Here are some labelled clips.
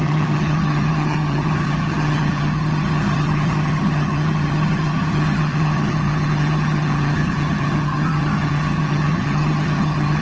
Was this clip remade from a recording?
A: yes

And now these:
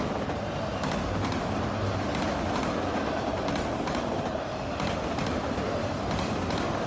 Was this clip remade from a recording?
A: no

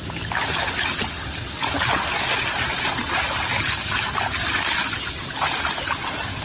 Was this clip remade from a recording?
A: no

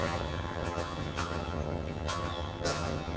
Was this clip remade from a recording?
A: yes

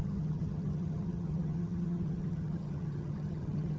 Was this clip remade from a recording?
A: yes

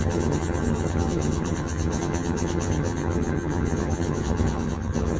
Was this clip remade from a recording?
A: yes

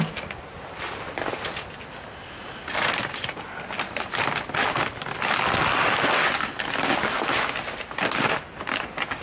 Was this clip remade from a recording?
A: no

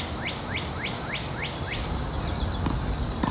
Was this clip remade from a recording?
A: no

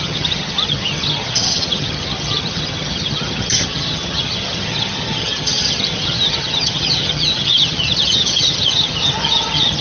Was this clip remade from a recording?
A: yes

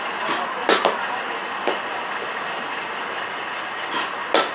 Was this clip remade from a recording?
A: no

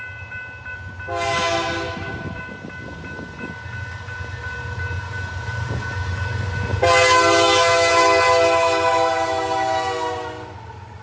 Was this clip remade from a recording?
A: no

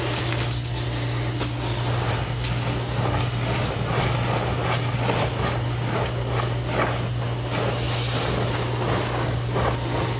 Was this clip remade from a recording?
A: no